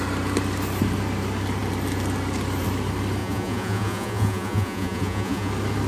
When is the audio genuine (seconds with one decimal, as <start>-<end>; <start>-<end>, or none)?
0.0-3.2; 5.5-5.9